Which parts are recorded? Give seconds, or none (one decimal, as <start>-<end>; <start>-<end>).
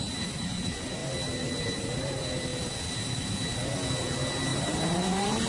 0.0-4.5